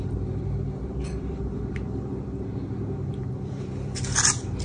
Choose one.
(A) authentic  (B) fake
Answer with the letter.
B